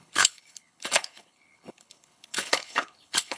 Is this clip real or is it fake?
fake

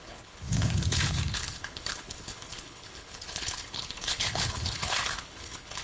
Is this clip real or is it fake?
fake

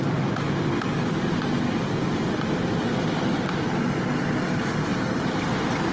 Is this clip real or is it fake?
real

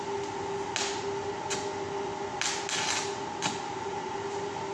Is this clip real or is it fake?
real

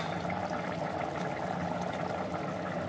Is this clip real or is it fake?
real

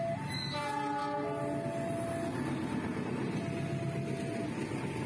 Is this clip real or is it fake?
real